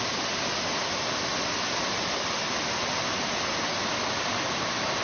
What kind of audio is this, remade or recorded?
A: recorded